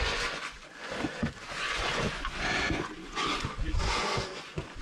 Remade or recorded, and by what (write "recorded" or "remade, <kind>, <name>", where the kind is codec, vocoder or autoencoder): remade, vocoder, Vocos